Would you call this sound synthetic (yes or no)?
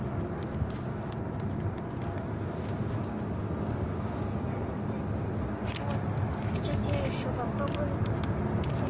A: no